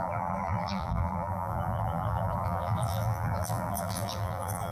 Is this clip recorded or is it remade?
remade